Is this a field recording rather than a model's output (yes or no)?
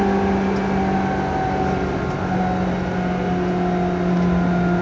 yes